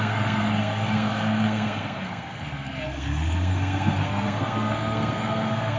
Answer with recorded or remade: remade